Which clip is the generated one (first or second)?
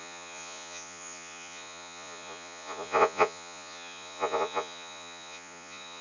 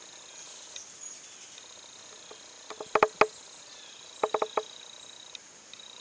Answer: first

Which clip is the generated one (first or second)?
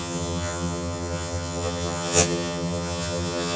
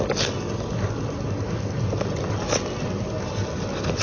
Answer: first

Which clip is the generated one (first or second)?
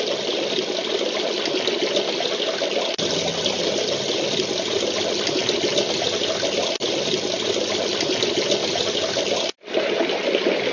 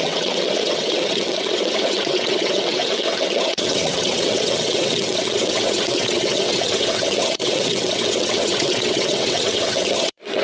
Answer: second